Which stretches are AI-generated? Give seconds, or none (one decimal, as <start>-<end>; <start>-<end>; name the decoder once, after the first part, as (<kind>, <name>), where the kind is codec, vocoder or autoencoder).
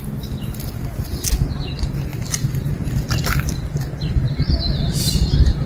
none